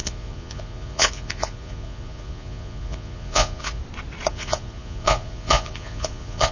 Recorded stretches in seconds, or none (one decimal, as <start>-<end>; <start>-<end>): 3.8-4.3